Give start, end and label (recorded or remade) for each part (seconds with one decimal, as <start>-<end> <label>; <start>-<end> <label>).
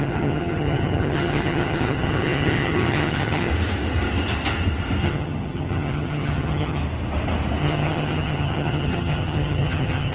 0.0-3.5 remade; 3.5-5.0 recorded; 5.0-6.8 remade; 6.8-7.6 recorded; 7.6-10.1 remade